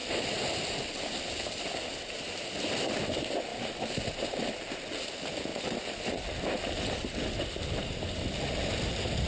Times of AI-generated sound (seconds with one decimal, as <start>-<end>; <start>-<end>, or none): none